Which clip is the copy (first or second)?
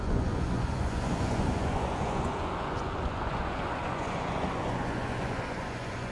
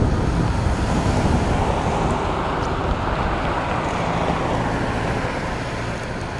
first